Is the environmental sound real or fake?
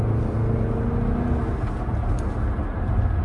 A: real